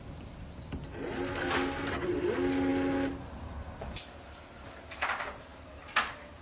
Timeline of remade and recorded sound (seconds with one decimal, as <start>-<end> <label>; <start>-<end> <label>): 0.0-6.4 recorded